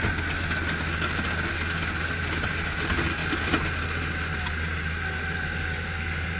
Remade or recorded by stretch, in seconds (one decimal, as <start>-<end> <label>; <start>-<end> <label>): 0.0-6.4 recorded